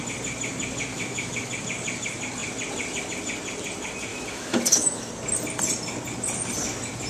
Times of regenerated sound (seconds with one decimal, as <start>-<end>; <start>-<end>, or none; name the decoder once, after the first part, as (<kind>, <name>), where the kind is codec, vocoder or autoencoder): 0.9-1.5 (autoencoder, DAC-VAE); 4.1-5.1

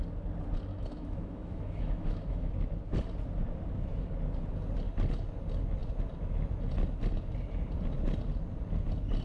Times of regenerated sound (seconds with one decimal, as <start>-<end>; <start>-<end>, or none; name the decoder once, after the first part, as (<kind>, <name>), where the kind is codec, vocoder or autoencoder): 0.7-2.5 (autoencoder, DAC-VAE)

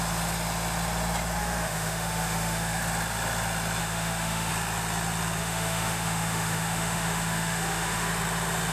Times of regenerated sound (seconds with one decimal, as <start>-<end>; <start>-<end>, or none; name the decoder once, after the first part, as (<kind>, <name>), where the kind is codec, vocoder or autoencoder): 1.4-2.8 (autoencoder, DAC-VAE); 3.8-4.5; 5.4-8.1

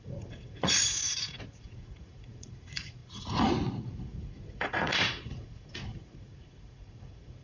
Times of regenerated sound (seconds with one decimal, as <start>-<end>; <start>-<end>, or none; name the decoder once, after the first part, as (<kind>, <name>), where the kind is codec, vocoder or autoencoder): 0.0-7.4 (vocoder, Vocos)

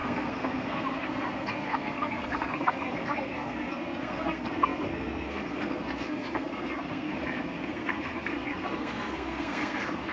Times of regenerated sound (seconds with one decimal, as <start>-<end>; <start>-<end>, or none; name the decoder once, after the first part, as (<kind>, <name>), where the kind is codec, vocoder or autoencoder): 0.0-10.1 (codec, SNAC)

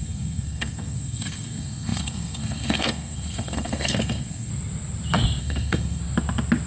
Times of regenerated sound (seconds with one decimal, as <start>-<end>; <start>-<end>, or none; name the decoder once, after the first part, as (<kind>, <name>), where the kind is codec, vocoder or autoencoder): 0.0-4.5 (codec, SNAC); 5.4-6.0

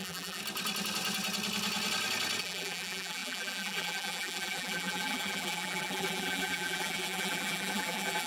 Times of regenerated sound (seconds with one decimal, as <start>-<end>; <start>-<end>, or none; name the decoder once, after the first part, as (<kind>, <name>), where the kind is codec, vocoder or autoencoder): 0.0-0.4 (vocoder, BigVGAN v2); 2.4-8.3

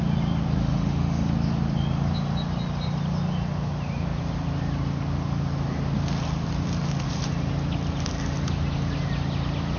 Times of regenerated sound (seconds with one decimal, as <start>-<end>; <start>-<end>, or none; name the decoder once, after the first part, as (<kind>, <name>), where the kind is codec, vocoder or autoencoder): 0.6-1.3 (autoencoder, DAC-VAE)